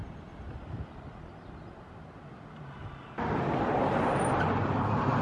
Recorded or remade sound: recorded